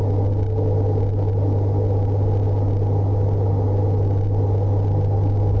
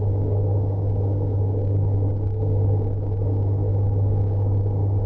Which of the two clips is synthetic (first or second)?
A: second